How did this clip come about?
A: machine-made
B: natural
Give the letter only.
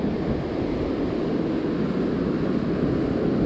B